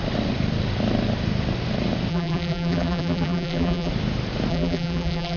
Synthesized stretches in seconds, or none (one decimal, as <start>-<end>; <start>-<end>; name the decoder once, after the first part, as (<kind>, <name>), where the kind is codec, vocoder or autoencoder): 2.1-3.9 (vocoder, BigVGAN v2); 4.5-5.4